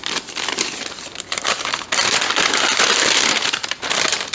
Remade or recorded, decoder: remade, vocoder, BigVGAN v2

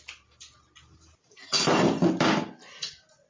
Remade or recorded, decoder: recorded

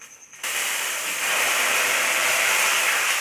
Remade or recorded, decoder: remade, vocoder, BigVGAN v2